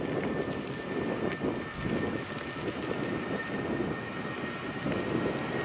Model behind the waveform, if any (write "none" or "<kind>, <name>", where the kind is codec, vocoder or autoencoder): none